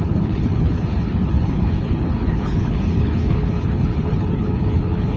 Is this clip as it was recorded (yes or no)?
no